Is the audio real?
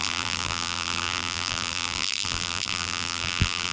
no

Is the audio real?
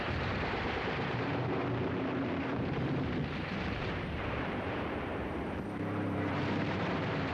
no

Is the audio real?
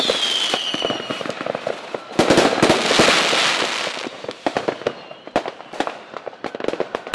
yes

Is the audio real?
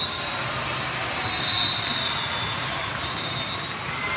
yes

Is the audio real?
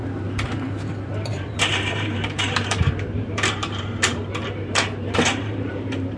no